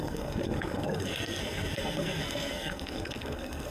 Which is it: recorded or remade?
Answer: remade